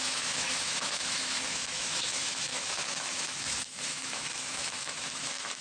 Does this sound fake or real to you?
fake